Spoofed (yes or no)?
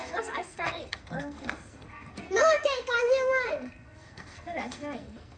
yes